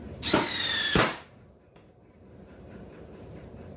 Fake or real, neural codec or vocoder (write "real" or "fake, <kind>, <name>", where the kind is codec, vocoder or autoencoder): fake, vocoder, BigVGAN v2